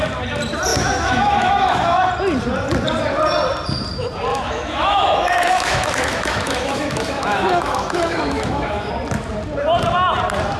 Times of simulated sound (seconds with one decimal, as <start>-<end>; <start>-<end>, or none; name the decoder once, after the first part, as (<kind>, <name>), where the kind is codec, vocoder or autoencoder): 0.7-2.1 (autoencoder, DAC-VAE); 4.3-8.9